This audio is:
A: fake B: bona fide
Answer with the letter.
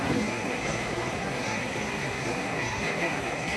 A